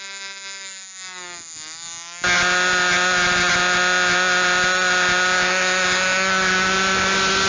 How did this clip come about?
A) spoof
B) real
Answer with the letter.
B